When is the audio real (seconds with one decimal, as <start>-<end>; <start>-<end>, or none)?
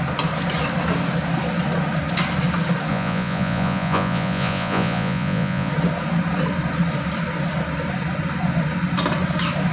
0.0-2.9; 5.7-9.7